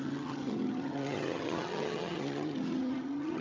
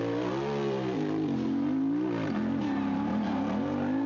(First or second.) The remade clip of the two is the first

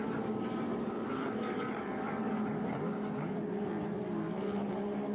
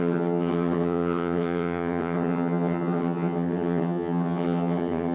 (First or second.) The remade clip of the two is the second